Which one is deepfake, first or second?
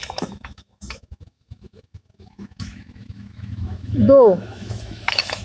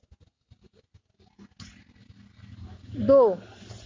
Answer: first